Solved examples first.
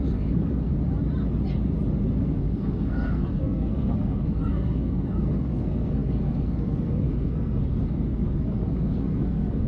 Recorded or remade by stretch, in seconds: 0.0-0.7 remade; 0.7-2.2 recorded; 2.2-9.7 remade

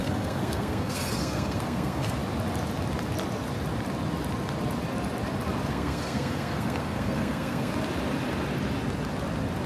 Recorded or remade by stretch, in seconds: 0.0-2.2 remade; 2.2-5.7 recorded; 5.7-7.7 remade; 7.7-9.7 recorded

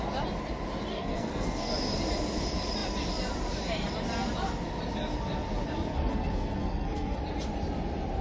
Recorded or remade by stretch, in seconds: 0.0-0.9 recorded; 0.9-1.7 remade; 1.7-5.9 recorded; 5.9-7.2 remade; 7.2-8.2 recorded

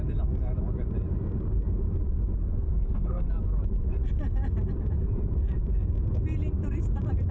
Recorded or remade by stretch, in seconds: 0.0-2.4 recorded; 2.4-3.3 remade; 3.3-7.3 recorded

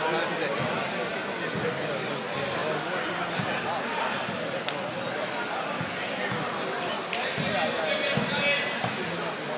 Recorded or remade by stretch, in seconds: 0.0-9.6 recorded